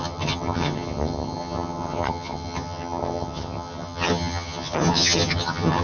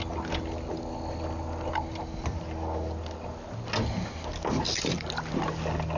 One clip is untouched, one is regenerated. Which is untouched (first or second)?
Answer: second